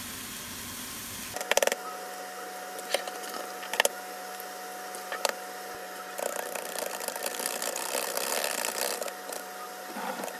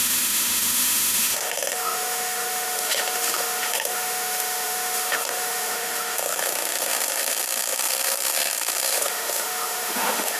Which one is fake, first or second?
second